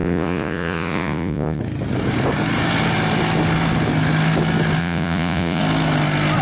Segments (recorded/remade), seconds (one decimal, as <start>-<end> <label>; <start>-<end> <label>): 0.0-1.6 remade; 1.6-4.8 recorded; 4.8-5.6 remade; 5.6-6.4 recorded